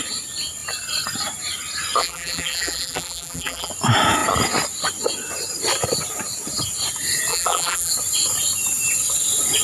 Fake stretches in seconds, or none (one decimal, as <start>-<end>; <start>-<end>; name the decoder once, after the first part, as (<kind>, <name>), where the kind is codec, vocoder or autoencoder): 2.0-3.7 (vocoder, BigVGAN v2); 7.3-7.9